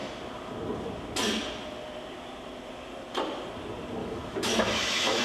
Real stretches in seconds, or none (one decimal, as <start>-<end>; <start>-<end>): 0.0-4.0